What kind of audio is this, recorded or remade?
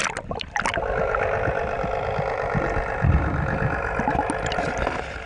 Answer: recorded